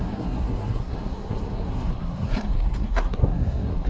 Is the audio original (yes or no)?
no